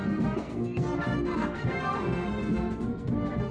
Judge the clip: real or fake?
fake